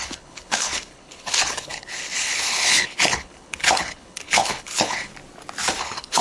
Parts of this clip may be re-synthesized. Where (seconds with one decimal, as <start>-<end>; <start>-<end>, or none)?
0.0-5.1; 5.8-6.2